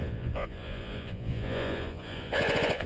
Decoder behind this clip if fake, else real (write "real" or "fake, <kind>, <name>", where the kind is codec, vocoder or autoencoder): fake, vocoder, Vocos